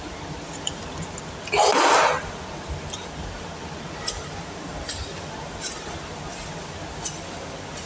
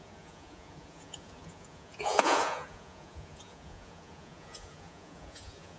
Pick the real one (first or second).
first